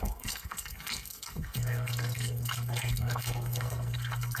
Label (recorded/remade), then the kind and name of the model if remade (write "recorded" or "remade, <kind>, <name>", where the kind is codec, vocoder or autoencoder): remade, codec, SNAC